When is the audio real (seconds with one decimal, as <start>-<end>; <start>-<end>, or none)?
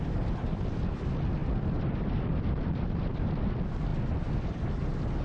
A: 0.0-5.2